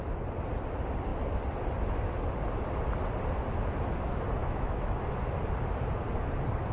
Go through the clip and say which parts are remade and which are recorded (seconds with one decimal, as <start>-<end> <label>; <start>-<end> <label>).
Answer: 0.0-4.4 recorded; 4.4-5.2 remade; 5.2-6.7 recorded